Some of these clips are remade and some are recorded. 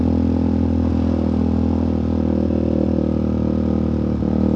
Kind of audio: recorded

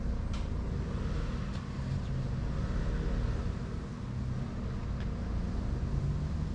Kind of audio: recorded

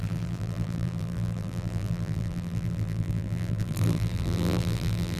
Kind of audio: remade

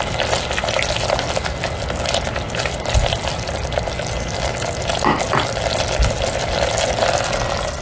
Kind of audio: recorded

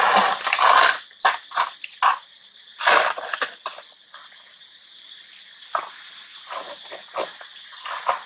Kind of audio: recorded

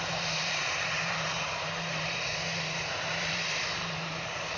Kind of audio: remade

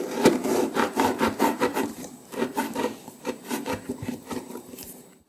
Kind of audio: remade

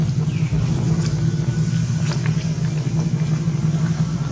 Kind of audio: recorded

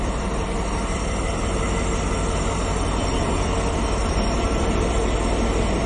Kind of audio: remade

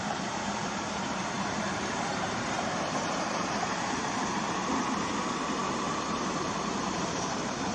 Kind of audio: remade